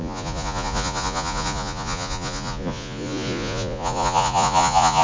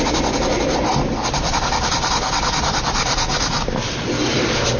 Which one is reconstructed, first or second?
first